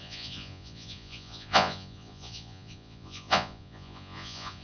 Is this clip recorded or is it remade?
remade